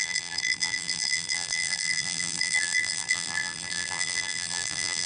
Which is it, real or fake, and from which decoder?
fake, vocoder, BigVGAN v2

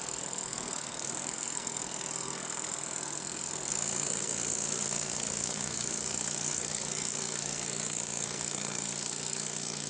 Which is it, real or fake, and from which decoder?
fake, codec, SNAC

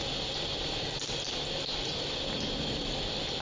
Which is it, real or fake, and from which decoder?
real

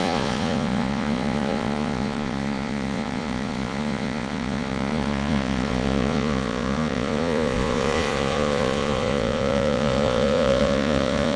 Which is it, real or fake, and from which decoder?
fake, vocoder, Vocos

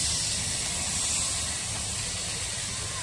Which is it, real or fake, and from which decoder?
real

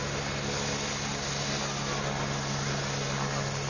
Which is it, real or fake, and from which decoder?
real